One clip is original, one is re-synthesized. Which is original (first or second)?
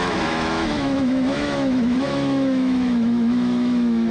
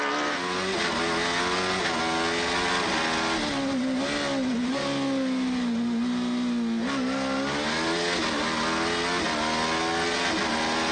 second